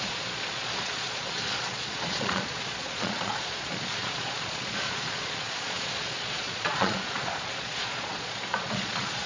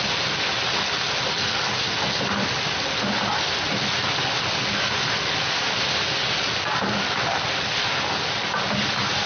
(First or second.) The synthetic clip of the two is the first